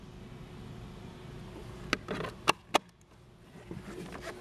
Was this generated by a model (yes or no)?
no